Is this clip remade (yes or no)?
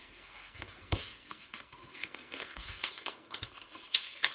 yes